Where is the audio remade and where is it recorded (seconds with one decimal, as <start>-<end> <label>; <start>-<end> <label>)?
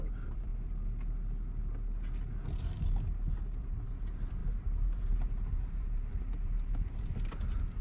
0.0-0.5 remade; 0.5-3.6 recorded; 3.6-7.8 remade